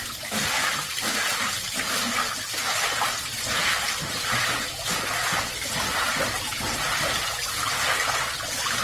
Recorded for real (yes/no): yes